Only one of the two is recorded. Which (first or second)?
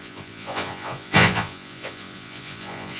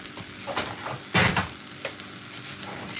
second